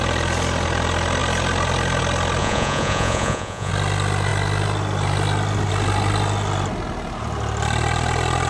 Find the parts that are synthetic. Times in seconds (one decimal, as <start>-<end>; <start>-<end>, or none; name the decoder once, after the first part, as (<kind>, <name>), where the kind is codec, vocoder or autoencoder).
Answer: 2.4-3.7 (vocoder, Vocos)